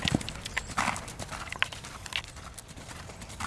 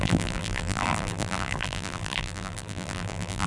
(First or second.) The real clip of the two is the first